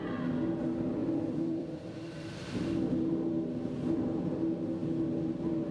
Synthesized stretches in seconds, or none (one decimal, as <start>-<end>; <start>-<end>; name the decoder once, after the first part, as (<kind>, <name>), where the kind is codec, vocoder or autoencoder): 1.0-2.6 (vocoder, BigVGAN v2)